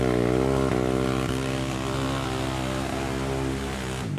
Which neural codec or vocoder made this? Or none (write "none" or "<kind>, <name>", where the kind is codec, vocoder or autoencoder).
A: none